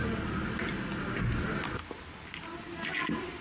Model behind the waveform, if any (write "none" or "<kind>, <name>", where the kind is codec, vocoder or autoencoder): none